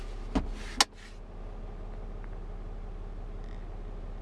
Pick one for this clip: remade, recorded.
recorded